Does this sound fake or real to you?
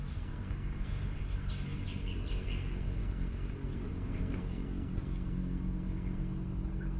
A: fake